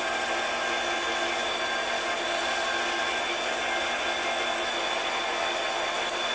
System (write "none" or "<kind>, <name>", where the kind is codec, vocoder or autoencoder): none